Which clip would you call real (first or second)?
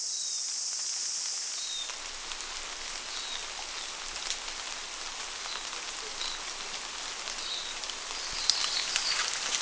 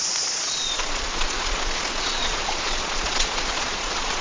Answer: first